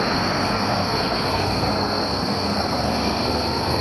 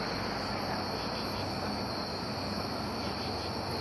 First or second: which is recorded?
second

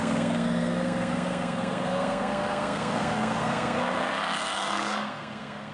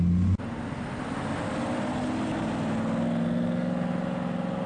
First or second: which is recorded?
second